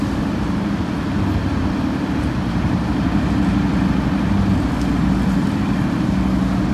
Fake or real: real